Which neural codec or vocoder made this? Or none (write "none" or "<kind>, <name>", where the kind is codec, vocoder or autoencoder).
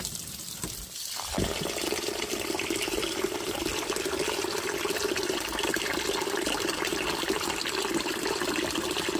vocoder, BigVGAN v2